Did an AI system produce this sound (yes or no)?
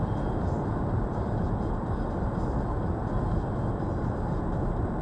no